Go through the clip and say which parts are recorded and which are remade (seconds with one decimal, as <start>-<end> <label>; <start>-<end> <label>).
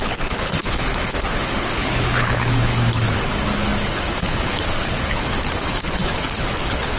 0.0-7.0 remade